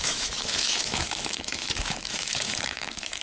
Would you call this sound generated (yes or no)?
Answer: yes